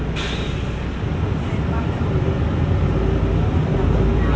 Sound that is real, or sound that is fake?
real